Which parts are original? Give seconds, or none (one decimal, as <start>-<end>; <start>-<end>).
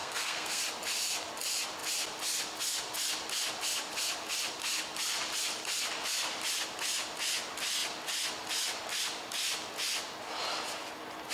0.6-11.3